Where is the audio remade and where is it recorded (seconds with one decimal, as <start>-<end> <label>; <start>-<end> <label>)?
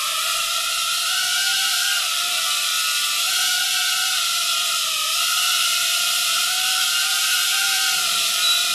0.0-2.7 remade; 2.7-3.3 recorded; 3.3-8.7 remade